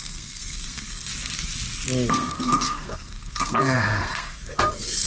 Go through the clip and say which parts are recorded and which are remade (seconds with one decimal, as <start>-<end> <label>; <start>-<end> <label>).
0.0-1.1 remade; 1.1-2.1 recorded; 2.1-5.1 remade